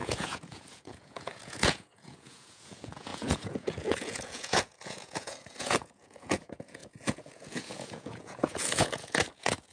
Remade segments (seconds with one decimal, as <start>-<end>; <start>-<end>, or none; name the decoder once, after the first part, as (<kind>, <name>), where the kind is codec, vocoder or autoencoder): 0.0-9.7 (vocoder, Vocos)